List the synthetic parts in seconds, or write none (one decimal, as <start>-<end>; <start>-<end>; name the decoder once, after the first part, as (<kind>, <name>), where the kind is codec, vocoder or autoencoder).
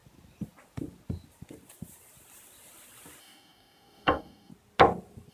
3.2-4.5 (codec, DAC)